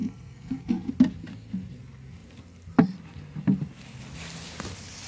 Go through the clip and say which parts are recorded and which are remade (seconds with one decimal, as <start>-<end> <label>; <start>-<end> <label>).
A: 0.0-0.9 remade; 0.9-5.1 recorded